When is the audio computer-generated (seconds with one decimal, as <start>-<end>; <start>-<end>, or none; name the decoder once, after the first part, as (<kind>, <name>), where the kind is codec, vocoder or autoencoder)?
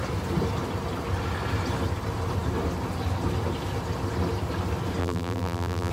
5.0-5.9 (vocoder, BigVGAN v2)